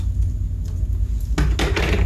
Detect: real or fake real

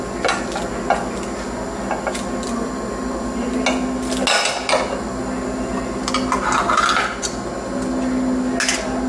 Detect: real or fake real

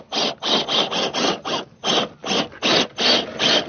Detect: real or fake real